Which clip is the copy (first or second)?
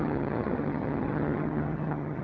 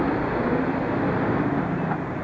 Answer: first